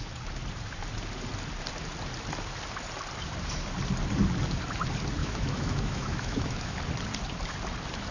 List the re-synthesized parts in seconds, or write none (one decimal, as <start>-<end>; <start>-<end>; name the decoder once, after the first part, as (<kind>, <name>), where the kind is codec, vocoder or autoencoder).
5.2-6.8 (autoencoder, DAC-VAE)